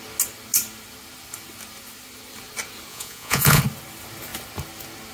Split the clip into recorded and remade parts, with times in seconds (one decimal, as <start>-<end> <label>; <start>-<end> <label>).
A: 0.0-2.9 recorded; 2.9-3.6 remade; 3.6-5.1 recorded